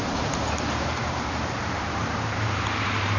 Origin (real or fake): fake